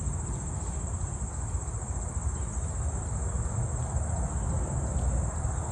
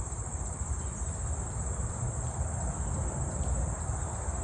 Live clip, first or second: first